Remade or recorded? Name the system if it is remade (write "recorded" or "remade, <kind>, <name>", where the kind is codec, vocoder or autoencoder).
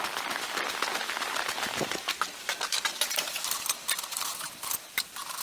recorded